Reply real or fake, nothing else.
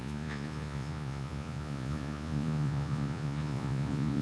fake